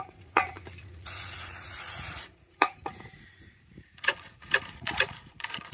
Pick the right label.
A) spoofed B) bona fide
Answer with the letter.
A